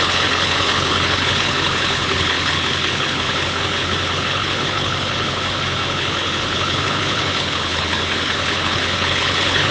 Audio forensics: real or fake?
fake